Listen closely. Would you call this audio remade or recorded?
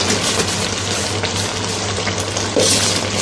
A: recorded